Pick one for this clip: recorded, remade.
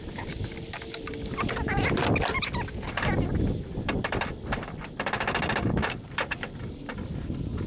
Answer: recorded